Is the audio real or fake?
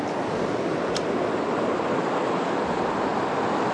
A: real